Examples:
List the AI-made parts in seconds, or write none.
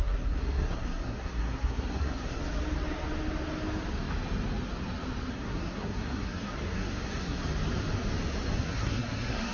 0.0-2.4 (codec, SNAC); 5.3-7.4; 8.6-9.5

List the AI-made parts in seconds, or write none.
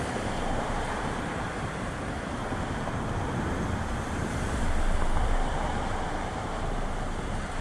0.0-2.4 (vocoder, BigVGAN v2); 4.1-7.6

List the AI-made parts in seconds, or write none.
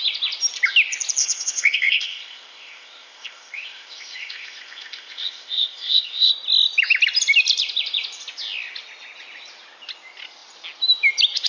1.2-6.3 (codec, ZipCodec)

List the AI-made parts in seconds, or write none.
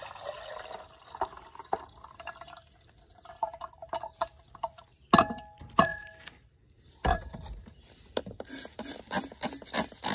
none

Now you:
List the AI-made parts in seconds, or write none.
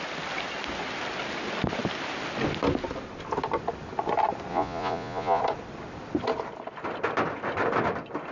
4.5-5.4 (vocoder, Vocos)